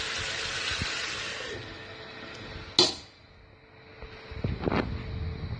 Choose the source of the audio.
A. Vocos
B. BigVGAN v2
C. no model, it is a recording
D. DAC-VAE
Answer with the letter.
C